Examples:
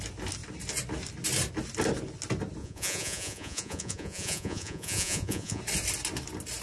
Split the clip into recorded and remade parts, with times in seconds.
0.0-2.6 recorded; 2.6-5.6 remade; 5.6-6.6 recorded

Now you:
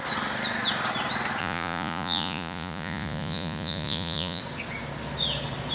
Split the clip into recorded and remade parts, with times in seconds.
0.0-1.4 recorded; 1.4-4.4 remade; 4.4-5.7 recorded

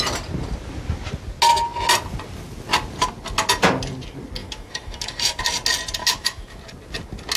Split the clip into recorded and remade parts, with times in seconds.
0.0-4.4 recorded; 4.4-5.4 remade; 5.4-6.0 recorded; 6.0-6.6 remade; 6.6-7.4 recorded